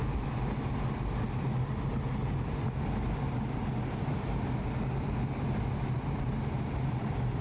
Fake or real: real